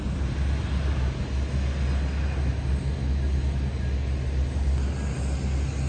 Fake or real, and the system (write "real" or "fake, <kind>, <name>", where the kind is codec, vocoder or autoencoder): real